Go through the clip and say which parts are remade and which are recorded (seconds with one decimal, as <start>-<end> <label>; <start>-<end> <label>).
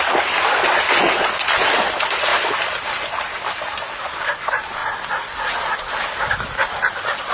0.0-7.3 recorded